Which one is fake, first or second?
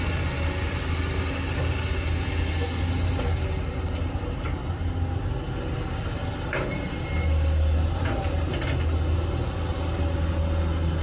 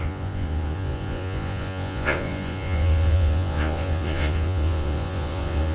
second